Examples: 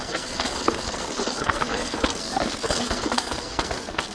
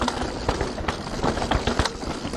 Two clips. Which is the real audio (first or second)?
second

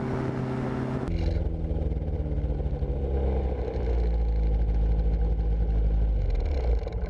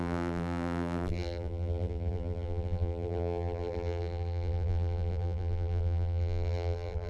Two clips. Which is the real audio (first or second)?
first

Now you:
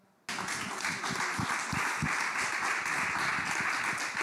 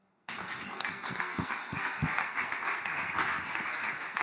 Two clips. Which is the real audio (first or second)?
first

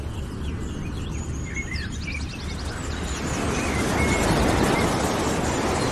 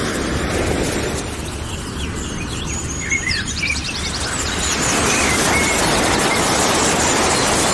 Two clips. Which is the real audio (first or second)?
first